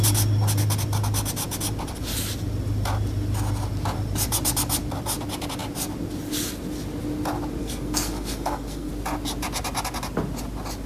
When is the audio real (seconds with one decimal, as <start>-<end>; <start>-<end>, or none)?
0.0-7.6; 8.9-10.9